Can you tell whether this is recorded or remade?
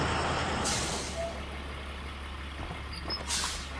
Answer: recorded